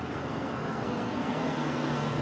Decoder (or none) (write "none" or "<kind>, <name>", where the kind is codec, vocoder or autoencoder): codec, SNAC